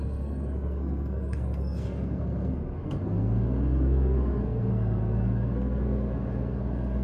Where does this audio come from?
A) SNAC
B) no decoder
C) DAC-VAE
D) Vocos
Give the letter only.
A